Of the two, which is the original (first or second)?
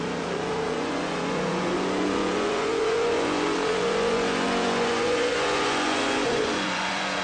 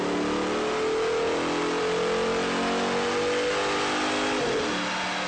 second